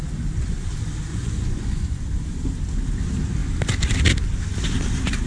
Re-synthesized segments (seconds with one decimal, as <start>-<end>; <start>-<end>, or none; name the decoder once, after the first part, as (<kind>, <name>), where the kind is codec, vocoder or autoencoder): 1.1-2.0 (vocoder, Vocos)